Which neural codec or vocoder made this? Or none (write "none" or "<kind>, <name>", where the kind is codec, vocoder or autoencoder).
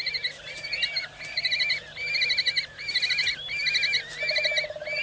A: none